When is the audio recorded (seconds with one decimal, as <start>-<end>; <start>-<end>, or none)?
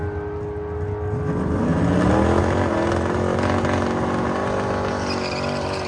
0.0-5.9